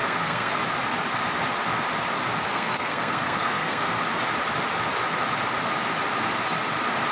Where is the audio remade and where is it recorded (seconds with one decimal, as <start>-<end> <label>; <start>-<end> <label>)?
0.0-0.5 remade; 0.5-2.5 recorded; 2.5-4.0 remade; 4.0-7.1 recorded